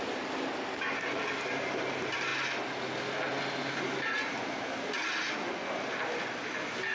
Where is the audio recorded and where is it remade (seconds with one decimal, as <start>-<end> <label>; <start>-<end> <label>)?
0.0-6.9 recorded